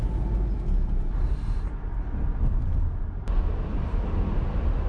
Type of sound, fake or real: real